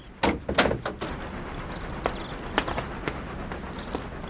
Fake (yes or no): no